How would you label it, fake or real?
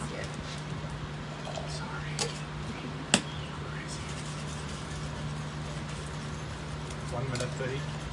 real